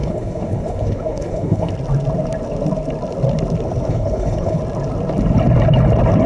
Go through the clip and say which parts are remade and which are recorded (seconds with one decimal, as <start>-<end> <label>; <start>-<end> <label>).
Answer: 0.0-1.7 remade; 1.7-3.9 recorded; 3.9-4.6 remade; 4.6-6.3 recorded